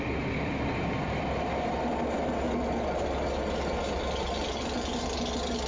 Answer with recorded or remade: recorded